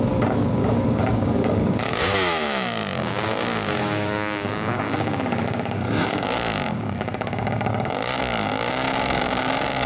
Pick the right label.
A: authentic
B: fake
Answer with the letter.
B